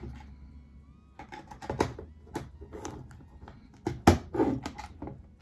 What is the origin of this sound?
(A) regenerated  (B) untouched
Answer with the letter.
B